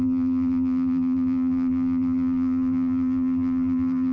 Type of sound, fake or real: fake